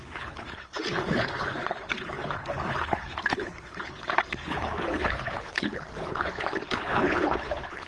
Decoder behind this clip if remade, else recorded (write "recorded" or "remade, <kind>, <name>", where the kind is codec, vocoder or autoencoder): remade, codec, HILCodec